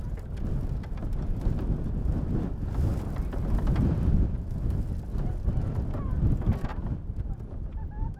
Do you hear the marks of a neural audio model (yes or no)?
no